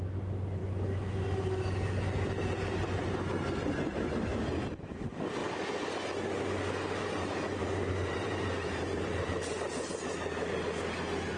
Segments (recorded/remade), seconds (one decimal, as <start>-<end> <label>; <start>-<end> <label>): 0.0-3.9 recorded; 3.9-4.9 remade; 4.9-7.6 recorded; 7.6-9.8 remade; 9.8-11.4 recorded